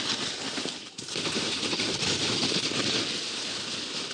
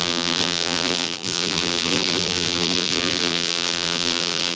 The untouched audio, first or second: first